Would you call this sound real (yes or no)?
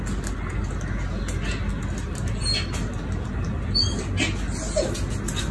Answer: yes